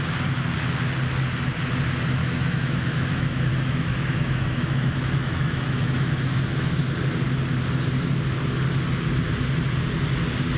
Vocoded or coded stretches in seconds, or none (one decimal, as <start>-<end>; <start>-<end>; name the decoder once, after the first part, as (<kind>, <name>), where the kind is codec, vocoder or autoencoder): 2.2-6.8 (autoencoder, DAC-VAE)

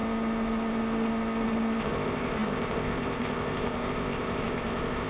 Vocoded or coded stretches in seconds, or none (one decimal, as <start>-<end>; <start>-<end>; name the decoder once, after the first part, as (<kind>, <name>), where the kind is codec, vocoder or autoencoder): 1.8-5.1 (codec, ZipCodec)

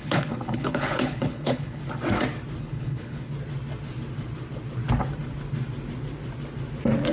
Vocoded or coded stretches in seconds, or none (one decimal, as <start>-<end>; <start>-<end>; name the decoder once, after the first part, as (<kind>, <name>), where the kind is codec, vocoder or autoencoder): 0.0-1.8 (codec, HILCodec); 2.6-3.3